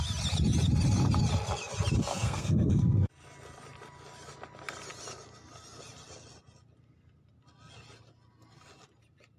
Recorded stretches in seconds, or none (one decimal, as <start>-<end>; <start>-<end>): 0.0-2.1; 3.1-9.4